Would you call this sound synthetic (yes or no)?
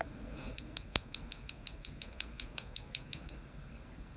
yes